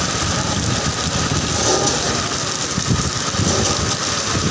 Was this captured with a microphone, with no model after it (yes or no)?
yes